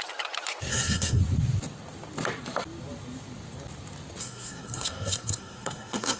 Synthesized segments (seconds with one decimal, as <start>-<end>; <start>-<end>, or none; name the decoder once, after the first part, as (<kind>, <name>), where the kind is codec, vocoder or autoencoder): 0.7-1.2 (codec, SNAC); 4.2-6.2